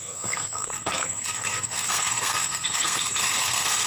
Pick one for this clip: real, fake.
fake